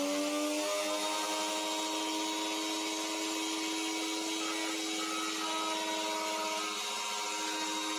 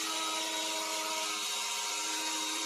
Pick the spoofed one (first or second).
second